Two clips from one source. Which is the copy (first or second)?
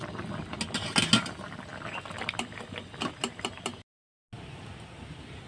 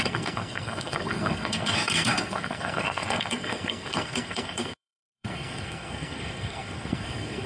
second